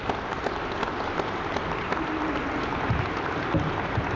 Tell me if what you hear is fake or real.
real